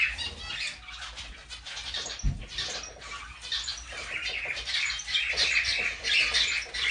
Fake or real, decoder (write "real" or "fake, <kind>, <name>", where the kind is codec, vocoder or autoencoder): real